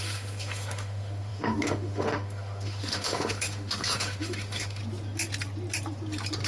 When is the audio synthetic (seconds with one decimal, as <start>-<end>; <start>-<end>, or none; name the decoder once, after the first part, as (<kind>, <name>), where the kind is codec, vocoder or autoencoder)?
0.0-4.8 (autoencoder, DAC-VAE)